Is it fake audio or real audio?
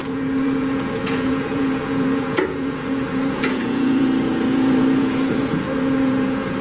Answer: fake